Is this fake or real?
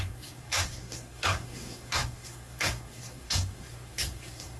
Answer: fake